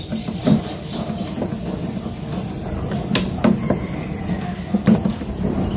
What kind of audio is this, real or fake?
real